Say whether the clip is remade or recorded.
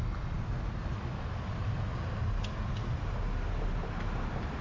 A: recorded